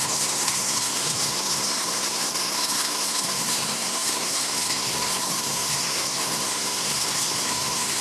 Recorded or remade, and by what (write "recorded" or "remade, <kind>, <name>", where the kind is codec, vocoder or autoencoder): remade, codec, SNAC